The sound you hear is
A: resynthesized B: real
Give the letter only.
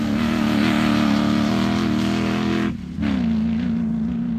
B